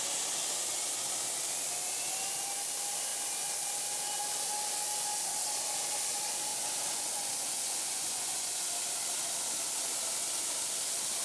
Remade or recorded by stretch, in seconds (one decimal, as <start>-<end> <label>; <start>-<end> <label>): 0.0-6.5 recorded; 6.5-8.7 remade; 8.7-11.2 recorded